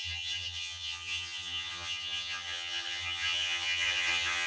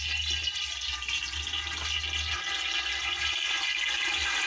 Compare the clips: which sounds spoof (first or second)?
first